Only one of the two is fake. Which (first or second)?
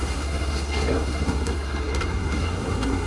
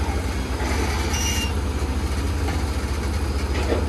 first